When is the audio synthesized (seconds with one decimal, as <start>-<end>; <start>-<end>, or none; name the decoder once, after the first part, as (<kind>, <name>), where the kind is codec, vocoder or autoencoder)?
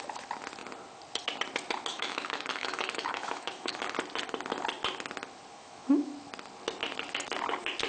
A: 1.9-3.8 (autoencoder, DAC-VAE); 5.5-6.1